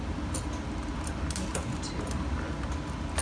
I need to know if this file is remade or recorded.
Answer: recorded